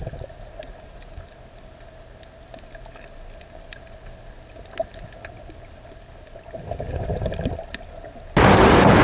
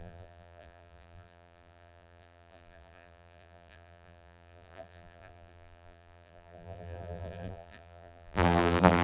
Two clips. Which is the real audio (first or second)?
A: first